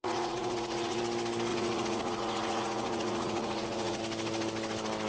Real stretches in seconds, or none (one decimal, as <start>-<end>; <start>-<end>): 1.0-1.5; 4.0-5.1